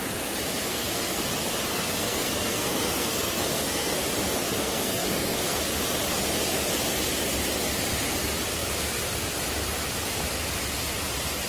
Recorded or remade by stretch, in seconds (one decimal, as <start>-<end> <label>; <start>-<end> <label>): 0.0-0.7 recorded; 0.7-1.2 remade; 1.2-1.7 recorded; 1.7-4.0 remade; 4.0-4.5 recorded; 4.5-5.6 remade; 5.6-11.5 recorded